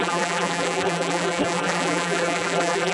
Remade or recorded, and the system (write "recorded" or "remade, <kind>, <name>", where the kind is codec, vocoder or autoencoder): remade, vocoder, BigVGAN v2